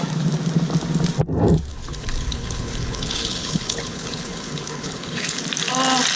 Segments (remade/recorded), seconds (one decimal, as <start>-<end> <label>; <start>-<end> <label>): 0.0-1.7 recorded; 1.7-5.4 remade; 5.4-6.2 recorded